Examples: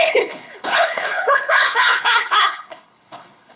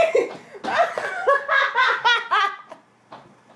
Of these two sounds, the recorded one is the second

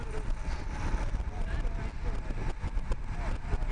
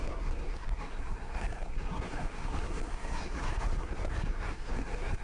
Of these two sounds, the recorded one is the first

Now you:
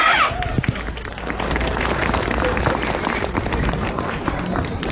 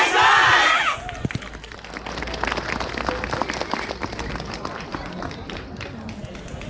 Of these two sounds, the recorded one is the second